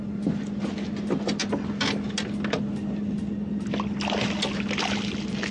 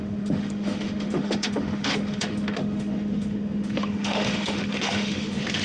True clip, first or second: first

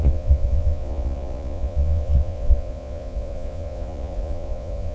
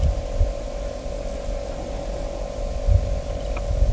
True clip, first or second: second